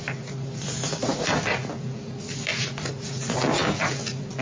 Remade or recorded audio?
recorded